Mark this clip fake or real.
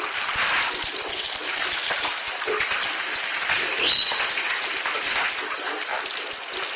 real